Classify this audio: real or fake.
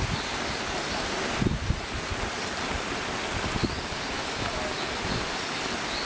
real